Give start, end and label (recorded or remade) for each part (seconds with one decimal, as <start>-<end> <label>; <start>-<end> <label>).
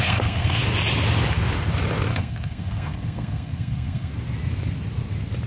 0.0-0.6 remade; 0.6-2.1 recorded; 2.1-4.1 remade; 4.1-5.5 recorded